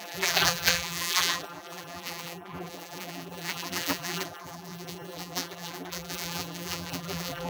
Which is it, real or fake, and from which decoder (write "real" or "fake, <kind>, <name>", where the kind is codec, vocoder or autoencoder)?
fake, vocoder, BigVGAN v2